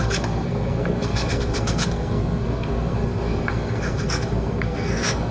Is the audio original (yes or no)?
no